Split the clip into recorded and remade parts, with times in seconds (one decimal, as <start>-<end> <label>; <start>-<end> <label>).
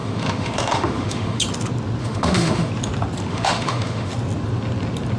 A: 0.0-1.4 remade; 1.4-2.0 recorded; 2.0-2.7 remade; 2.7-3.3 recorded; 3.3-4.1 remade; 4.1-5.2 recorded